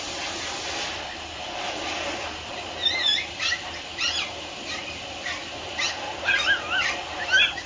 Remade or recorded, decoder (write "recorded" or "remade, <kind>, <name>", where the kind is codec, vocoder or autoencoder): recorded